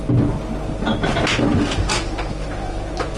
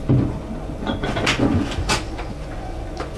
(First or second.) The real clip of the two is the first